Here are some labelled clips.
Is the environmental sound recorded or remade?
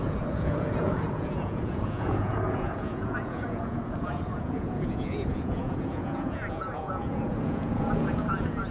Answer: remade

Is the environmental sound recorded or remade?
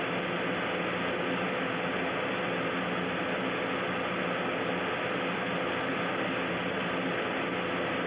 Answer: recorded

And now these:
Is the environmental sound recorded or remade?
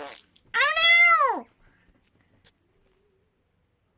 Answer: recorded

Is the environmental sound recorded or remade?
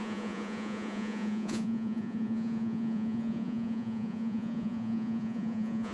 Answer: remade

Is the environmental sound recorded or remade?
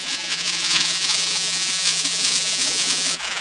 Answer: remade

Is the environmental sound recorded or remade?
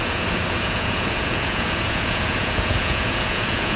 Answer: remade